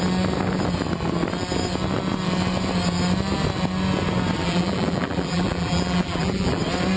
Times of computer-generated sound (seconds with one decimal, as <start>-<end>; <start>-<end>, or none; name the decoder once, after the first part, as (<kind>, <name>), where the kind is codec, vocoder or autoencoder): 4.4-6.6 (vocoder, BigVGAN v2)

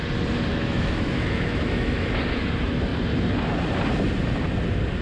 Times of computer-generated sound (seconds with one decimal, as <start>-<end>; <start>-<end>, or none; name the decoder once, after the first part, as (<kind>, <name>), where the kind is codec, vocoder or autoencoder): 0.5-2.1 (autoencoder, DAC-VAE)

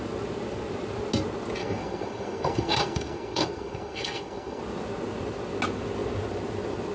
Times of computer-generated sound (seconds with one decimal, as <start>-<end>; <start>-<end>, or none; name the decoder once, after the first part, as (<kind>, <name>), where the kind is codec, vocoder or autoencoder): 1.6-4.6 (codec, SNAC)

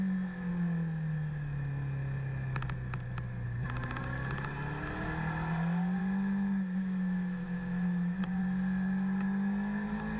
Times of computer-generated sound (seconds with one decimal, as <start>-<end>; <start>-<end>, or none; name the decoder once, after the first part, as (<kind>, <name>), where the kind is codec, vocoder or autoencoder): 6.0-8.4 (autoencoder, DAC-VAE)

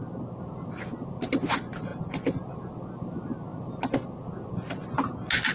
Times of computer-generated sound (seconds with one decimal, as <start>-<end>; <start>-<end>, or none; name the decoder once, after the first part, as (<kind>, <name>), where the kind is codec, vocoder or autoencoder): none

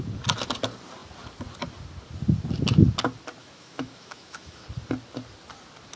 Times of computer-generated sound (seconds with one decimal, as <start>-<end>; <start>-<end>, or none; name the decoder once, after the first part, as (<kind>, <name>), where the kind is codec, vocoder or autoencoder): 3.4-4.6 (autoencoder, DAC-VAE)